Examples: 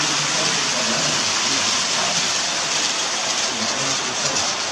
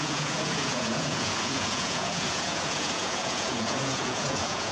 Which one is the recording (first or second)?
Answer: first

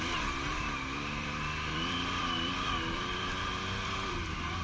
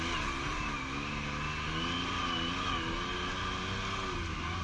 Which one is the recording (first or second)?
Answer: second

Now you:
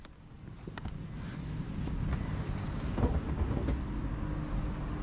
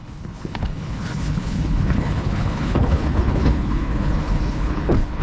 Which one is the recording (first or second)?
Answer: first